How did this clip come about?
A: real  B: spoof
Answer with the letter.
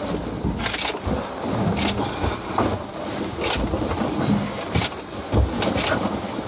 A